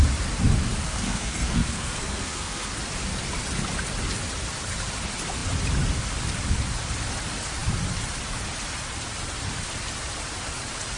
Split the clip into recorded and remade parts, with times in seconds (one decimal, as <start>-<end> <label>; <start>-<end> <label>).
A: 0.0-0.8 recorded; 0.8-2.7 remade; 2.7-11.0 recorded